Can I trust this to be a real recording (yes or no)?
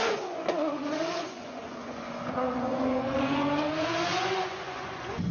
no